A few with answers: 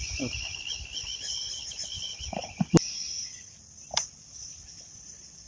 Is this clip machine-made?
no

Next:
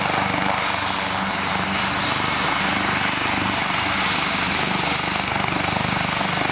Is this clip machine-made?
no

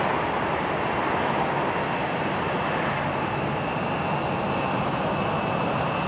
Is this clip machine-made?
no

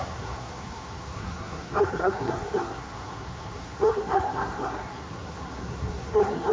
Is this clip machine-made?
yes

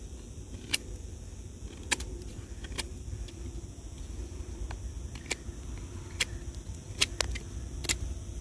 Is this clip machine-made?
no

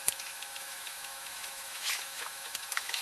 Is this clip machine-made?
yes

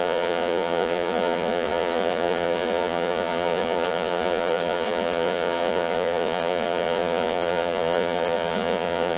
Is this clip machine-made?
yes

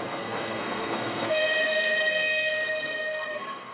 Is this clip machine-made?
yes